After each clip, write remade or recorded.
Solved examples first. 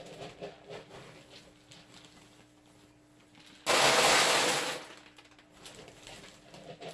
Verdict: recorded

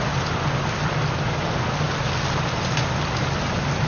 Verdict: recorded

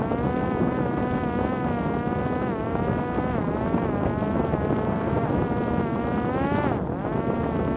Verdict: recorded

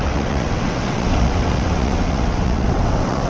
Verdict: remade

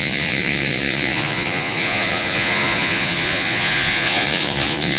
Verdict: remade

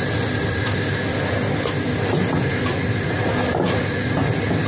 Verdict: recorded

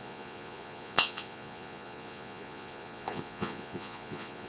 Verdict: remade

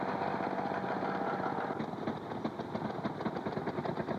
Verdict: recorded